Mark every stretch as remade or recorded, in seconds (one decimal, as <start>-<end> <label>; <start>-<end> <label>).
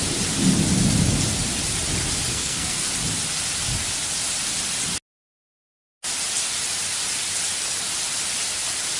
0.0-2.3 recorded; 2.3-2.9 remade; 2.9-9.0 recorded